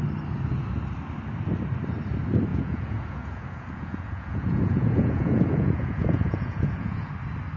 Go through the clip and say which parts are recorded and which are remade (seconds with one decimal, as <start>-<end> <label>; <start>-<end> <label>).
0.0-2.5 recorded; 2.5-7.1 remade; 7.1-7.6 recorded